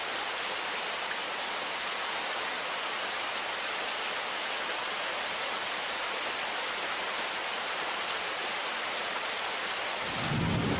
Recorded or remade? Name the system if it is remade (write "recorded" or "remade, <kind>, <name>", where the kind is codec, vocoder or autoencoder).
recorded